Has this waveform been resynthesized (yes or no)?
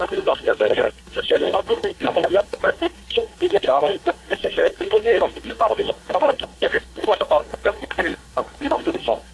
yes